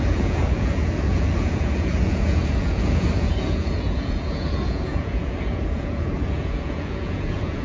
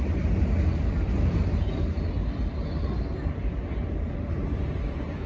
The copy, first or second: first